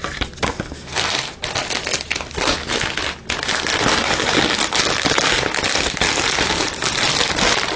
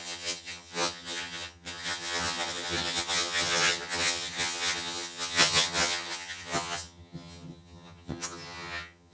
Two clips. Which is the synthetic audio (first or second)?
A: second